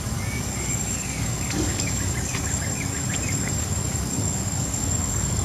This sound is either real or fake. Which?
fake